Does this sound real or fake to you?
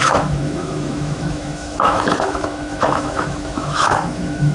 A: fake